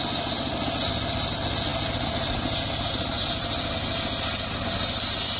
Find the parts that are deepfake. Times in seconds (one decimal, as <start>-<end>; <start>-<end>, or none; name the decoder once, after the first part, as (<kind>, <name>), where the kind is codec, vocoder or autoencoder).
none